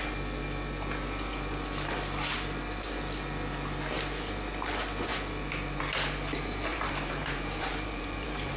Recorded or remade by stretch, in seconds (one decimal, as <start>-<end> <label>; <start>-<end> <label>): 0.0-6.7 recorded; 6.7-8.6 remade